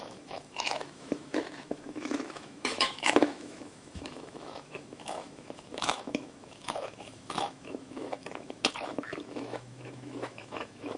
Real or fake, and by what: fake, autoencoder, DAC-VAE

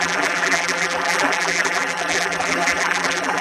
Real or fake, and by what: fake, vocoder, BigVGAN v2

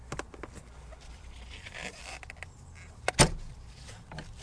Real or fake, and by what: real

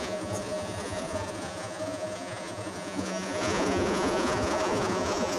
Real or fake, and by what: fake, vocoder, Vocos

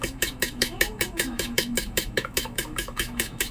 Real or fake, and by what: fake, autoencoder, DAC-VAE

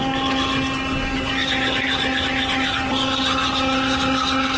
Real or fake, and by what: real